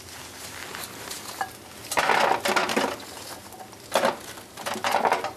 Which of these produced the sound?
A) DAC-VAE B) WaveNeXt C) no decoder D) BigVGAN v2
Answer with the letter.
C